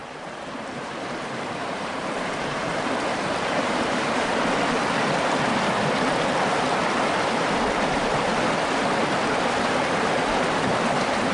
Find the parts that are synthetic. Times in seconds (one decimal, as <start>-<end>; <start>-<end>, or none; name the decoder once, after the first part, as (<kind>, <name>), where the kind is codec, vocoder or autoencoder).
0.0-4.4 (vocoder, BigVGAN v2)